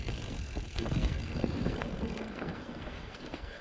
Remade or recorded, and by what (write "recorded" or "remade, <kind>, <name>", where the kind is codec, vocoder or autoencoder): remade, codec, SNAC